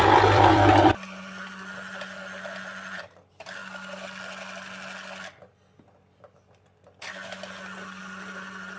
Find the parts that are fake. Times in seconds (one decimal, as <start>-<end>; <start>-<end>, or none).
0.0-3.6; 5.8-8.8